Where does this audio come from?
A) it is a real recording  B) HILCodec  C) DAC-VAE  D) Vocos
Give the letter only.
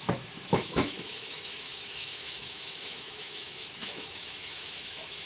C